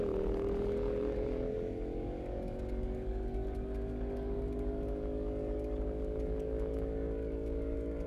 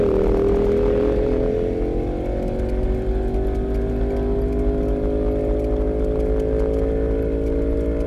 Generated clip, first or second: first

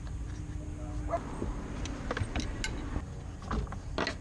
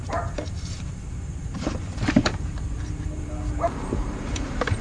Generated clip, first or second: second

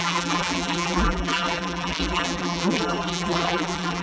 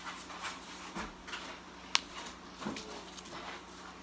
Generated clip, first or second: first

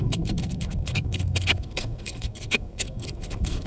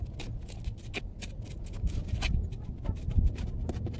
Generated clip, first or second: first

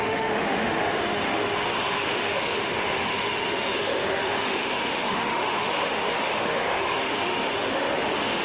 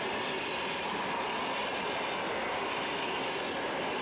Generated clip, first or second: first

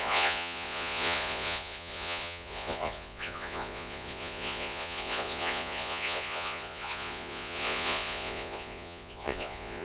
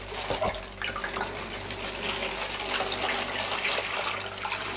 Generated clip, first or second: first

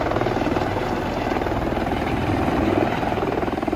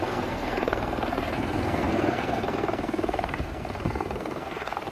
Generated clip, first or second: second